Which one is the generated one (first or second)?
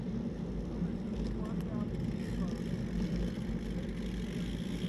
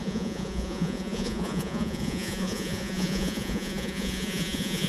second